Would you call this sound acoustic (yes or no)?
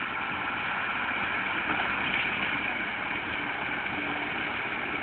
yes